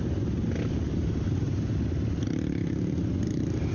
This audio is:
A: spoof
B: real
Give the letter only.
B